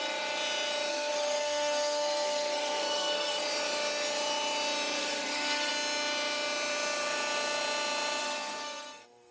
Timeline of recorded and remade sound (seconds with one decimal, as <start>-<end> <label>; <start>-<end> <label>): 0.0-0.9 recorded; 0.9-3.4 remade; 3.4-5.0 recorded; 5.0-5.7 remade; 5.7-8.2 recorded; 8.2-9.3 remade